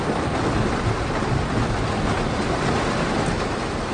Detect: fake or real real